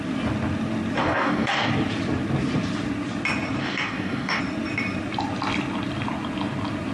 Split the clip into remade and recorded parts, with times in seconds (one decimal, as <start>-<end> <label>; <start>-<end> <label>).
0.0-1.0 recorded; 1.0-1.7 remade; 1.7-3.6 recorded; 3.6-4.4 remade; 4.4-6.9 recorded